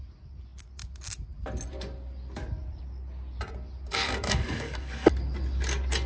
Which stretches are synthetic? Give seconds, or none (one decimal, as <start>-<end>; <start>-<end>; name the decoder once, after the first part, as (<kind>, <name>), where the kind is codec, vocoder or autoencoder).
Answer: 3.9-5.1 (codec, DAC)